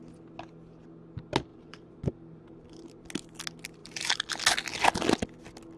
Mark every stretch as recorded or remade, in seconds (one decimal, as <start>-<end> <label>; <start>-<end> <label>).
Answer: 0.0-1.5 recorded; 1.5-2.9 remade; 2.9-3.8 recorded; 3.8-4.4 remade; 4.4-5.8 recorded